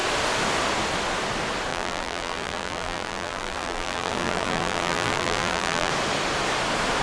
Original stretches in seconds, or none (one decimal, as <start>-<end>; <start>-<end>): 0.0-1.7; 5.9-7.0